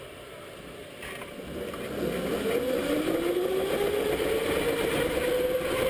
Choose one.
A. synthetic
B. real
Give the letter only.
B